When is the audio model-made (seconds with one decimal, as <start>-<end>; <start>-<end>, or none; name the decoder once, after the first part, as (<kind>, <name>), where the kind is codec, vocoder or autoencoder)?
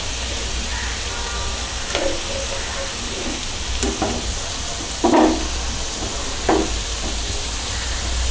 none